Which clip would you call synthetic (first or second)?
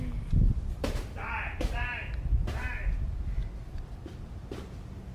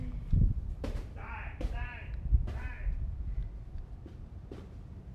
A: second